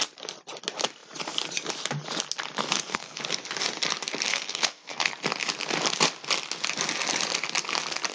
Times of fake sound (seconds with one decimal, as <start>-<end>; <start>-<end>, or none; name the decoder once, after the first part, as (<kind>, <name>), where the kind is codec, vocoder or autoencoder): 2.6-3.2 (codec, SNAC); 4.3-5.1